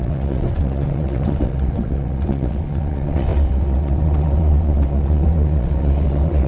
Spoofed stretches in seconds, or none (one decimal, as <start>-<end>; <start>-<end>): 0.0-6.5